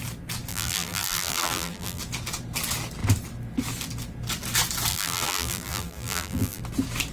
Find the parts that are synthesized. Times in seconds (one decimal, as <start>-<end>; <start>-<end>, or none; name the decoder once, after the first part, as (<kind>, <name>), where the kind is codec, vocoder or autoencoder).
0.5-2.0 (vocoder, BigVGAN v2); 4.9-6.6